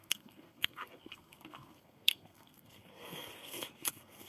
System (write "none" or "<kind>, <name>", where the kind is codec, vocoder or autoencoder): codec, SNAC